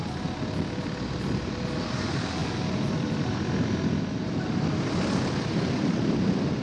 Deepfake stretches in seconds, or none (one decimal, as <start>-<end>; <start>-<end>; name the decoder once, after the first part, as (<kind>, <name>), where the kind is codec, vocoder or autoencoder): none